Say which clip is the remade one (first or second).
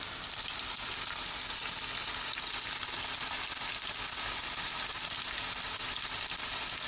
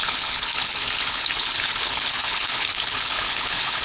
second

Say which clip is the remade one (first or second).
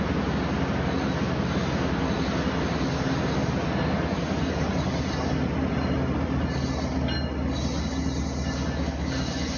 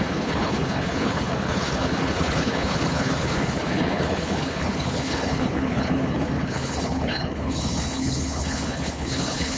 second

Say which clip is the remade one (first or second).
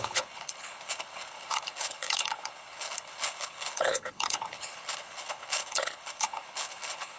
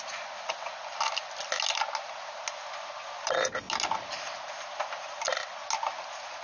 first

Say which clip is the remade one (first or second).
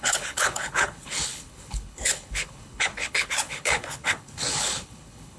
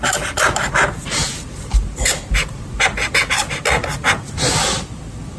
first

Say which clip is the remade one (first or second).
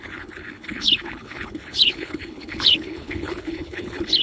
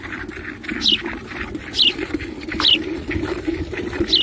first